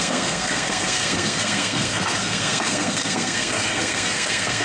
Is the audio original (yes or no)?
no